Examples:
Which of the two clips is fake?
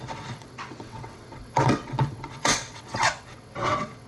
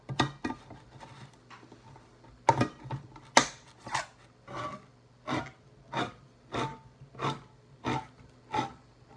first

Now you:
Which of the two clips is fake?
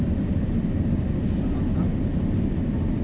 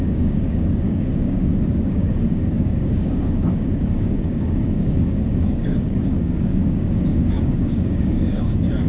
second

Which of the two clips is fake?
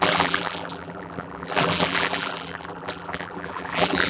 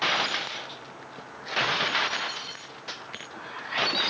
first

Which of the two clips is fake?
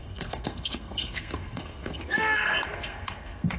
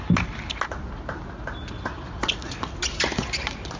first